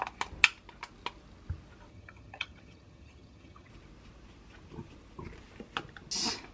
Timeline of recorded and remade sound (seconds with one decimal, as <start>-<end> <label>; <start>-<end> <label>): 0.0-1.9 recorded; 1.9-3.7 remade; 3.7-6.5 recorded